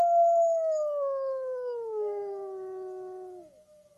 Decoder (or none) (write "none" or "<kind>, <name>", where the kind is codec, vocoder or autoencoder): autoencoder, DAC-VAE